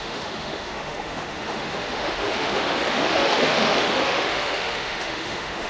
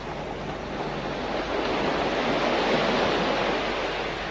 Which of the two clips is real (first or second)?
second